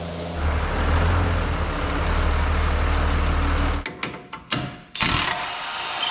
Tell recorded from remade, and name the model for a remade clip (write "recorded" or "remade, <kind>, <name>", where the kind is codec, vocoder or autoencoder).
recorded